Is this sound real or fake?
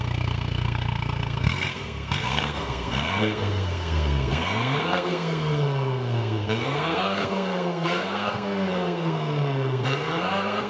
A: fake